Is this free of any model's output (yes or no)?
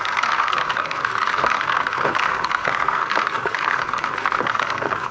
no